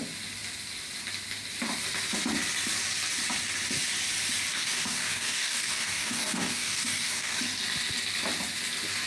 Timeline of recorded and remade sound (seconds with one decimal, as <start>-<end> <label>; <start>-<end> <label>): 0.0-4.5 recorded; 4.5-7.4 remade; 7.4-9.1 recorded